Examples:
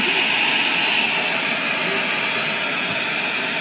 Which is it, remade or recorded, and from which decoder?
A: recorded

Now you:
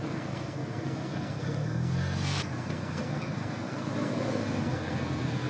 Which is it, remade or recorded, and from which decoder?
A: remade, codec, SNAC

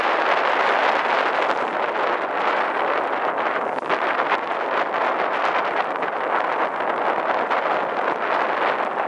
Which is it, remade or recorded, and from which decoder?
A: recorded